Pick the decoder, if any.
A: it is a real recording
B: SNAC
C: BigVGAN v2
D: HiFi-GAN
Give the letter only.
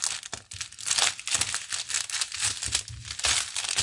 A